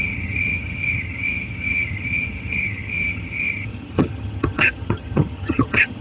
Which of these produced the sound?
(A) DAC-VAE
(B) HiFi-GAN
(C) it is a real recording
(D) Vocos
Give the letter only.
B